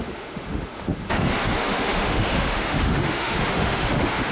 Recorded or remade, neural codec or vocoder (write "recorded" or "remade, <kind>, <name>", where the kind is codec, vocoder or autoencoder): remade, autoencoder, DAC-VAE